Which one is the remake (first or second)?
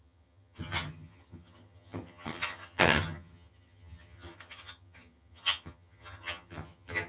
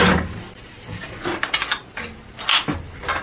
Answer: first